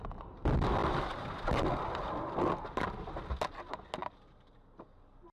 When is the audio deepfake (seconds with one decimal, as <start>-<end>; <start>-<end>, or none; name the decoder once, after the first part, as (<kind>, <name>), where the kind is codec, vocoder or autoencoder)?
4.0-4.5 (vocoder, BigVGAN v2)